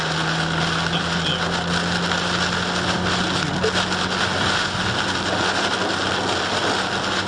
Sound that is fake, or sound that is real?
real